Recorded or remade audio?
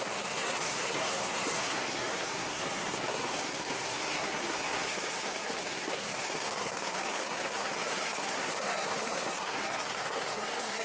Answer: remade